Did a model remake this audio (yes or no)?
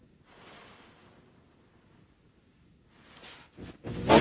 no